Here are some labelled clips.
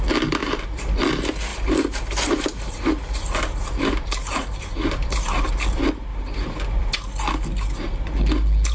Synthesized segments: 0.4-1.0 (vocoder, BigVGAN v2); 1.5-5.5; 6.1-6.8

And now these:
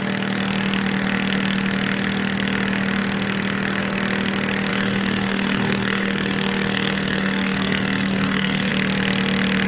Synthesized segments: 4.7-8.7 (codec, SNAC)

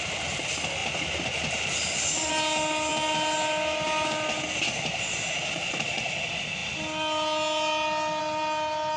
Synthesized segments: 0.8-2.3 (vocoder, BigVGAN v2)

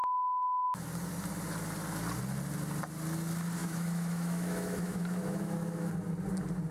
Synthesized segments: 3.6-5.9 (autoencoder, DAC-VAE)